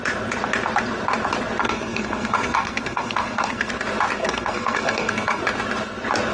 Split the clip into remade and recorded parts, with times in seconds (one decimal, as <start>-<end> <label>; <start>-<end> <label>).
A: 0.0-1.6 recorded; 1.6-3.7 remade; 3.7-4.2 recorded; 4.2-5.4 remade; 5.4-6.3 recorded